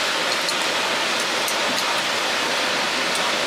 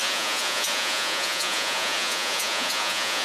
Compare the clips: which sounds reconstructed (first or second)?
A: second